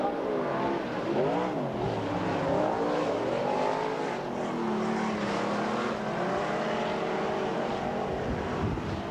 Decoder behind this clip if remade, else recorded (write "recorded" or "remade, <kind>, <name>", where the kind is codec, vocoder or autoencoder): recorded